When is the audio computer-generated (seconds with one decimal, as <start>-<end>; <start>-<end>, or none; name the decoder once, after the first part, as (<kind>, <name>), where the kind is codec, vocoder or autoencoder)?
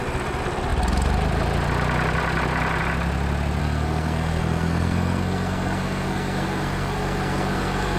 3.6-8.0 (codec, SNAC)